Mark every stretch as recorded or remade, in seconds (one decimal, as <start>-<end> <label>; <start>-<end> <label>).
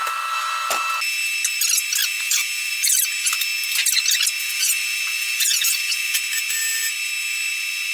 0.0-2.0 recorded; 2.0-2.7 remade; 2.7-4.4 recorded; 4.4-6.2 remade; 6.2-7.9 recorded